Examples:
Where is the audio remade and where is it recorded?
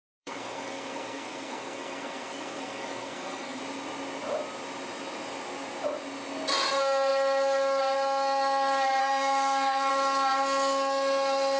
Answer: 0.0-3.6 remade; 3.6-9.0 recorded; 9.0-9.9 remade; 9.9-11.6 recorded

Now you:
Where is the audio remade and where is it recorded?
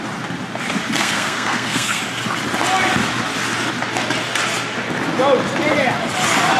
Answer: 0.0-1.0 recorded; 1.0-2.0 remade; 2.0-6.6 recorded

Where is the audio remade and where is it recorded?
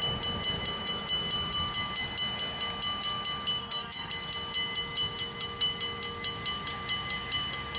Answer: 0.0-3.6 recorded; 3.6-4.1 remade; 4.1-7.8 recorded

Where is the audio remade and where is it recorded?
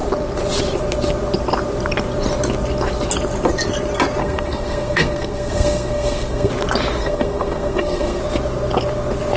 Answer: 0.0-4.2 recorded; 4.2-6.5 remade; 6.5-7.0 recorded; 7.0-8.2 remade; 8.2-9.4 recorded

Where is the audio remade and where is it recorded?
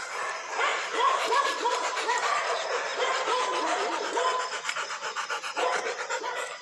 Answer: 0.0-0.7 recorded; 0.7-2.4 remade; 2.4-2.9 recorded; 2.9-4.2 remade; 4.2-6.6 recorded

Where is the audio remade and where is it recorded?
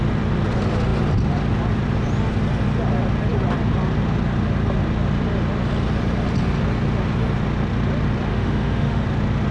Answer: 0.0-8.3 recorded; 8.3-9.0 remade; 9.0-9.5 recorded